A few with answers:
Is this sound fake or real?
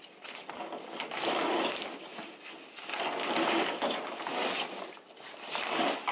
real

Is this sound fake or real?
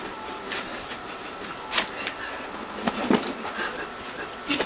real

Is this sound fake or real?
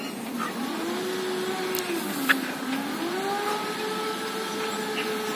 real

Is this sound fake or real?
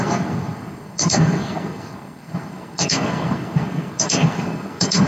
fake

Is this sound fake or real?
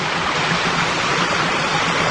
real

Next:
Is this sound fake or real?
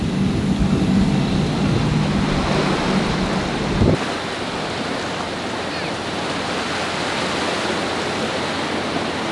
real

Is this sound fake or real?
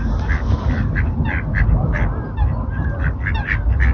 real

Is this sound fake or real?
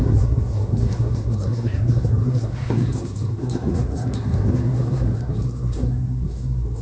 fake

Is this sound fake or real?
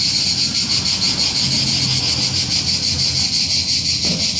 real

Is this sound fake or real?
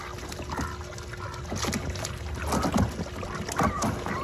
real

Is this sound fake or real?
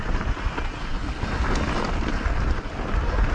real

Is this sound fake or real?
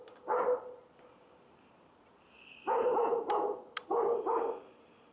real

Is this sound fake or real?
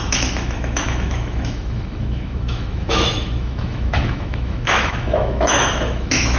fake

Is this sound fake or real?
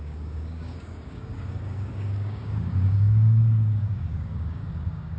fake